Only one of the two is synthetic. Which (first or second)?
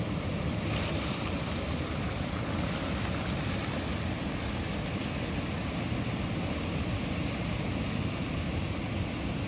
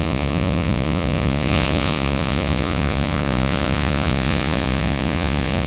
second